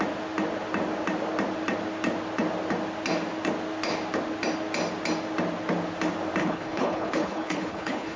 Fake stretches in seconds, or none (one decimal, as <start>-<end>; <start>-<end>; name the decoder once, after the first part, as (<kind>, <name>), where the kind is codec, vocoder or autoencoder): 6.4-8.2 (codec, HILCodec)